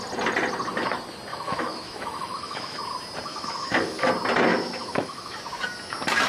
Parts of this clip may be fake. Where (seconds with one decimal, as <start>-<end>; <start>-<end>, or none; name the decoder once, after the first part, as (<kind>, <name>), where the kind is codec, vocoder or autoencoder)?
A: 1.3-2.8 (autoencoder, DAC-VAE); 3.3-4.1; 4.5-5.4